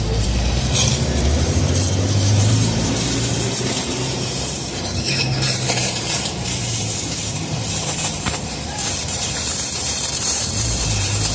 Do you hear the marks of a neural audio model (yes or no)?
yes